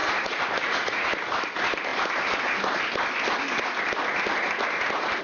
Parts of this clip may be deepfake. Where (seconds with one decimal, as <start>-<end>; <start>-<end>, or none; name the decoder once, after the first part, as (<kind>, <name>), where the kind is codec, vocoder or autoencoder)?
0.0-1.1 (vocoder, Vocos)